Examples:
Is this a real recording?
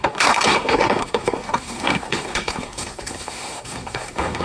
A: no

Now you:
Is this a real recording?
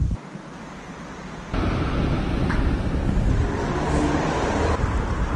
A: no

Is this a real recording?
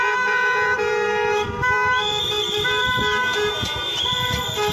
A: no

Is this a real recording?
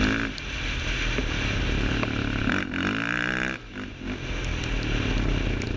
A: yes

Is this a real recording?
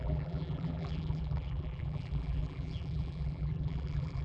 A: no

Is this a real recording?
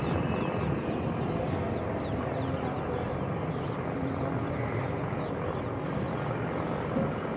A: yes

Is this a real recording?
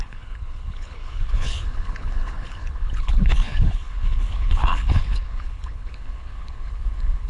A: no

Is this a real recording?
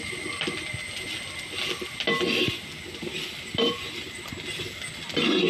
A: yes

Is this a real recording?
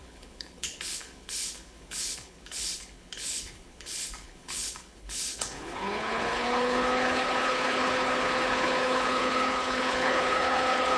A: no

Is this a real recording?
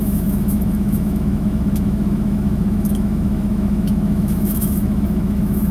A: no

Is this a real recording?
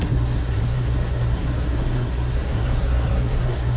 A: no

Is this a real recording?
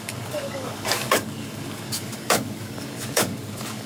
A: no